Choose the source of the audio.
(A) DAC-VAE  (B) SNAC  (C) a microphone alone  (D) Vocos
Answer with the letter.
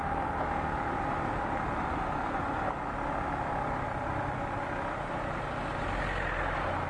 C